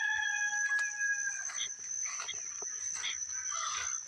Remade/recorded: recorded